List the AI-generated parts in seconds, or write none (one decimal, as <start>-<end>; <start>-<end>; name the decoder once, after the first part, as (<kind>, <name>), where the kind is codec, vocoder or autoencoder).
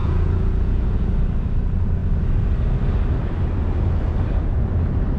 0.0-1.1 (vocoder, Vocos)